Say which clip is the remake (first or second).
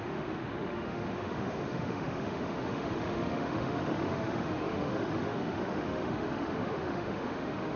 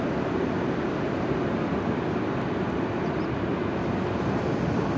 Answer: first